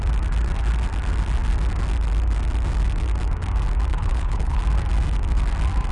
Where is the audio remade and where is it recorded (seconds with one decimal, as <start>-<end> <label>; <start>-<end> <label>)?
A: 0.0-3.9 recorded; 3.9-4.6 remade; 4.6-5.9 recorded